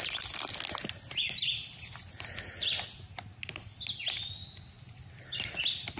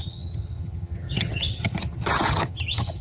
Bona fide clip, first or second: first